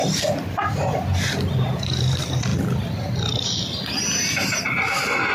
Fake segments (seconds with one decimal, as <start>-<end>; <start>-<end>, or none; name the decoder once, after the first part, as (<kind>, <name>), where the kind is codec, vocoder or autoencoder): none